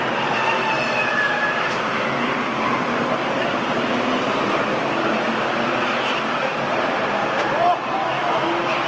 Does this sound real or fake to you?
fake